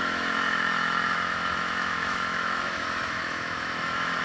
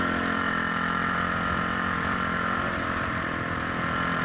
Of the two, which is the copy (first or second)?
first